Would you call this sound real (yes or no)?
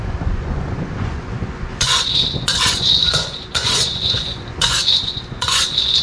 no